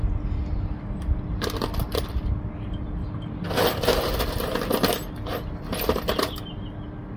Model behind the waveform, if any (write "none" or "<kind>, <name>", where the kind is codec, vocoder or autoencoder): none